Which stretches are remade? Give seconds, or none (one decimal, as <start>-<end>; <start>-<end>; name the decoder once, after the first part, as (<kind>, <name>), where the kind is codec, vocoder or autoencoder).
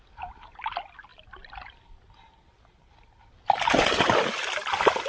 none